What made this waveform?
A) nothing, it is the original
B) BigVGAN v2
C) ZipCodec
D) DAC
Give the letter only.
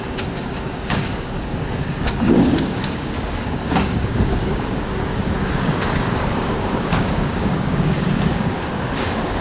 D